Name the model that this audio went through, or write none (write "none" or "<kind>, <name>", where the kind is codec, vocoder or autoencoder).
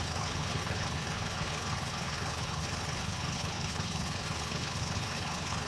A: codec, HILCodec